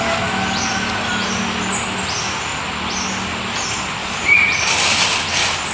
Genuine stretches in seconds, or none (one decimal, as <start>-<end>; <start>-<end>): 0.0-4.0; 5.2-5.7